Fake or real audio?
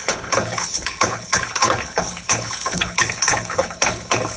fake